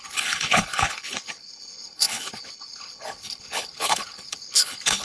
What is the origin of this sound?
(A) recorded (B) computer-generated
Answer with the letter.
B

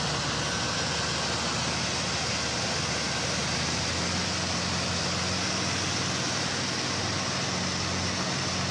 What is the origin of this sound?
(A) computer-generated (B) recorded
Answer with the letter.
B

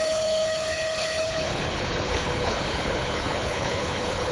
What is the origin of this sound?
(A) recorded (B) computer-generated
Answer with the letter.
B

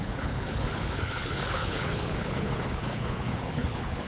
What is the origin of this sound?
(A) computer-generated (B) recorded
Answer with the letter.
A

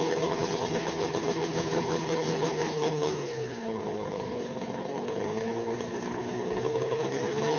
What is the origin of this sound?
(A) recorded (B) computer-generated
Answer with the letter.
B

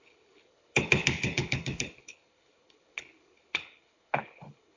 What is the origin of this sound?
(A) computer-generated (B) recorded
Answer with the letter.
A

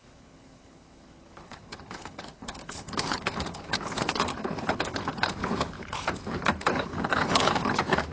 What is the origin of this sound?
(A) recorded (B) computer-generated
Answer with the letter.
B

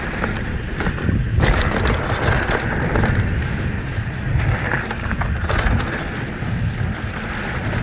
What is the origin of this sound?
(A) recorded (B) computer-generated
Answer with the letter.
A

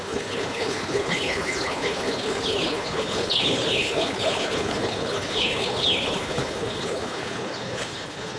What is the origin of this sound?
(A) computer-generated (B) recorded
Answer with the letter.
A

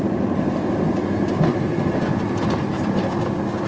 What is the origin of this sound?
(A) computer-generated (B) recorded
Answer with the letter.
B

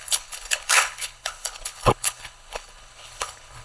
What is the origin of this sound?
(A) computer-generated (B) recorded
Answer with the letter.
A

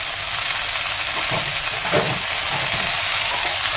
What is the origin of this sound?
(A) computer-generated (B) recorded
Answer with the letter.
B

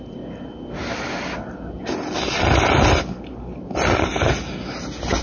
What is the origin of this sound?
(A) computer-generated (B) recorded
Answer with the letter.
B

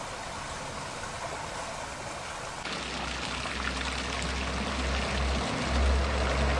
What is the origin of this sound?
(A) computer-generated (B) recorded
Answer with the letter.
B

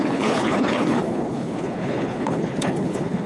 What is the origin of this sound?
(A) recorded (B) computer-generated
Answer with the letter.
B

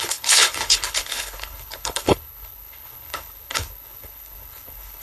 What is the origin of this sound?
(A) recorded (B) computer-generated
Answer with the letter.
B